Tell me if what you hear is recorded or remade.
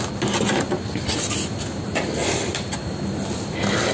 recorded